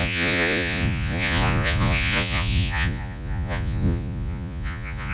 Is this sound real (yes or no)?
no